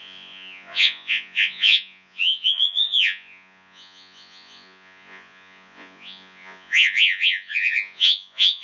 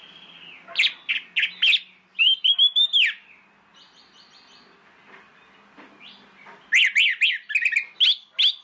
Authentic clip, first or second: second